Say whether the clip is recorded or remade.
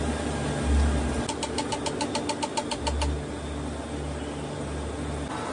recorded